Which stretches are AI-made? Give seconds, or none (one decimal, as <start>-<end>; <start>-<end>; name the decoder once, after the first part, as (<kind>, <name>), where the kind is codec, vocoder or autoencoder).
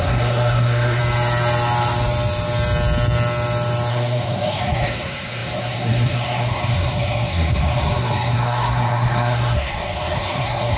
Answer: 0.0-1.0 (codec, SNAC); 3.9-10.8